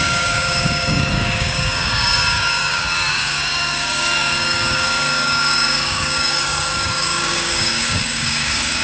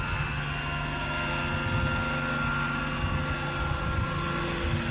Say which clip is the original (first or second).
second